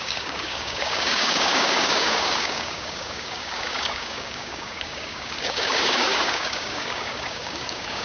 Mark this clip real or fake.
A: fake